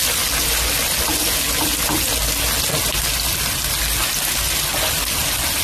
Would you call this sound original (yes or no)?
yes